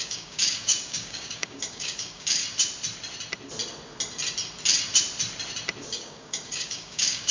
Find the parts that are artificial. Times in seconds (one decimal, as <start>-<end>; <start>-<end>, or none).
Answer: 0.0-2.4; 5.8-7.3